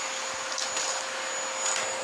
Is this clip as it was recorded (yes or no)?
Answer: yes